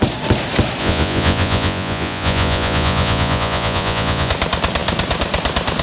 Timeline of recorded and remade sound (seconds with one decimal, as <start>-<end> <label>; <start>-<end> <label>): 0.0-0.8 recorded; 0.8-4.3 remade; 4.3-5.8 recorded